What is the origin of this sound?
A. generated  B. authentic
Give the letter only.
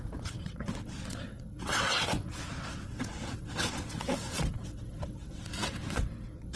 A